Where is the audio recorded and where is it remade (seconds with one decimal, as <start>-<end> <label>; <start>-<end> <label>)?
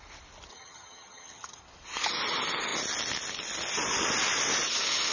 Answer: 0.0-0.5 recorded; 0.5-1.6 remade; 1.6-5.1 recorded